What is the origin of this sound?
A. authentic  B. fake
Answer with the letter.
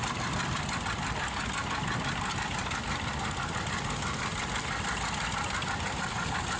A